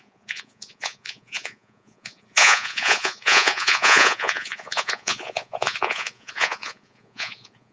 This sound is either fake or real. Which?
fake